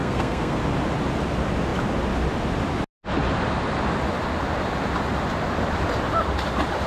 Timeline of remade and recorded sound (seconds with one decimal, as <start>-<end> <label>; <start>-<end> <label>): 0.0-0.6 remade; 0.6-6.9 recorded